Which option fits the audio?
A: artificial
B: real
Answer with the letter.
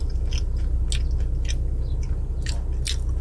B